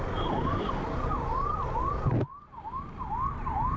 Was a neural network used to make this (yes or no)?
no